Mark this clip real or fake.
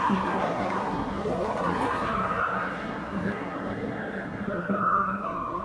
fake